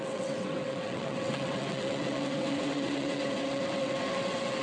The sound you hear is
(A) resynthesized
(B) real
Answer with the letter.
A